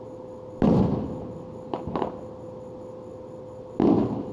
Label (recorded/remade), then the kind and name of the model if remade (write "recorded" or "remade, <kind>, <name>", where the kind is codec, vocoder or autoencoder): recorded